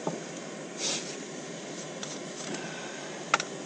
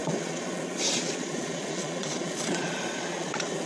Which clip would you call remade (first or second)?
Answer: second